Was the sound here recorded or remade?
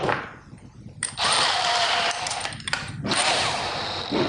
remade